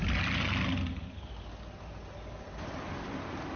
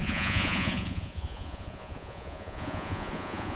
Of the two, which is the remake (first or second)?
second